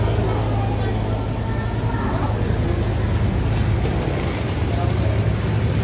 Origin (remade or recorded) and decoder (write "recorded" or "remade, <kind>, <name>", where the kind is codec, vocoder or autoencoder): recorded